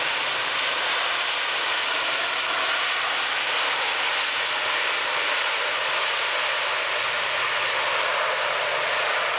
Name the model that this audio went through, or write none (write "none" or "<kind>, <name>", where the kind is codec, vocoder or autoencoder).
none